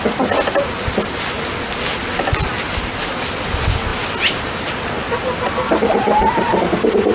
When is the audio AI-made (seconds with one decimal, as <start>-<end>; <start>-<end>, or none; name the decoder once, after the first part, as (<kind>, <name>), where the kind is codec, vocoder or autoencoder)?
none